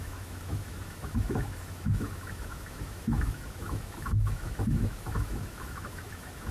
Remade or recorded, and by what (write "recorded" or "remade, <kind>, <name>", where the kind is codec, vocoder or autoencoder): remade, autoencoder, DAC-VAE